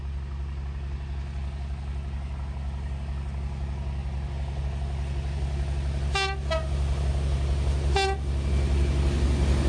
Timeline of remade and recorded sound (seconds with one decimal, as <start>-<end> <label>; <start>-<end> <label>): 0.0-9.7 recorded